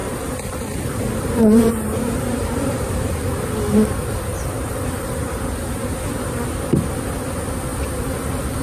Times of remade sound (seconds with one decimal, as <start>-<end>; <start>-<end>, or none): 0.0-3.1; 4.3-5.6